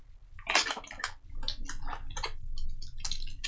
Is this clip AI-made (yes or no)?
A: no